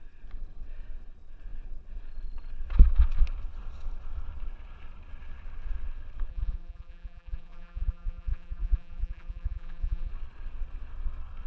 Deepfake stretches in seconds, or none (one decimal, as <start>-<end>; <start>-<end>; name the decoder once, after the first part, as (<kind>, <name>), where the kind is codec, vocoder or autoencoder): 6.3-10.1 (vocoder, BigVGAN v2)